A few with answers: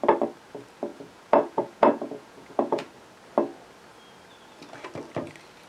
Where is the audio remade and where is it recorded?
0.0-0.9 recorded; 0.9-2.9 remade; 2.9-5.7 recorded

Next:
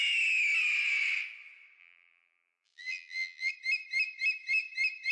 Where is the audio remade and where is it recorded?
0.0-1.8 recorded; 1.8-3.5 remade; 3.5-5.1 recorded

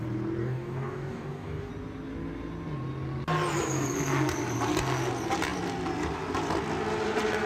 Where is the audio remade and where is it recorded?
0.0-0.4 recorded; 0.4-1.7 remade; 1.7-7.5 recorded

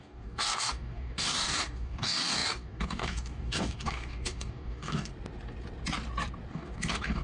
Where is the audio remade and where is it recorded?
0.0-5.1 remade; 5.1-6.5 recorded; 6.5-7.2 remade

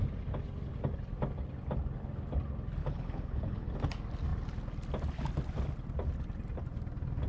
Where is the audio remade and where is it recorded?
0.0-2.8 recorded; 2.8-3.7 remade; 3.7-7.3 recorded

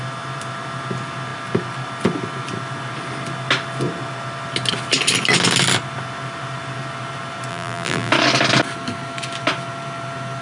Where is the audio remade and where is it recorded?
0.0-7.5 recorded; 7.5-8.1 remade; 8.1-10.4 recorded

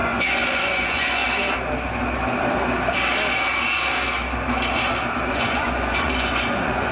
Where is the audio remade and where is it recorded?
0.0-1.2 remade; 1.2-5.3 recorded; 5.3-6.9 remade

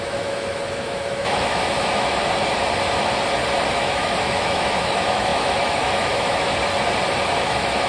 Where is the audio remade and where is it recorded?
0.0-2.2 remade; 2.2-3.7 recorded; 3.7-6.5 remade; 6.5-7.2 recorded; 7.2-7.9 remade